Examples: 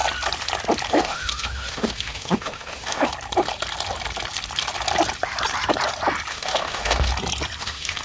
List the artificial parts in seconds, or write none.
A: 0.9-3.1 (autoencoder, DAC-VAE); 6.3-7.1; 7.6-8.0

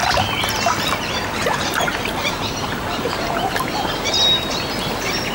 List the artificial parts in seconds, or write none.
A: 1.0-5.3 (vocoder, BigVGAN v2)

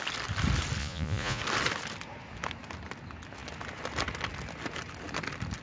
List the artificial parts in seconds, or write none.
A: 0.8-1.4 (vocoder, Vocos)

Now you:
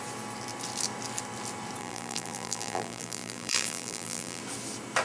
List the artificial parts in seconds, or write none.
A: 1.8-4.4 (vocoder, BigVGAN v2)

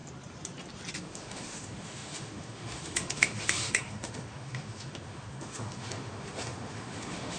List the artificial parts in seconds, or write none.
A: 1.0-7.4 (autoencoder, DAC-VAE)

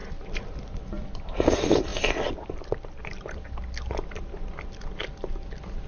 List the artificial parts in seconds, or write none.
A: none

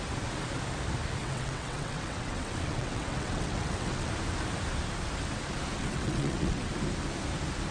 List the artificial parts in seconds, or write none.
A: 1.2-4.1 (vocoder, WaveNeXt); 5.8-6.7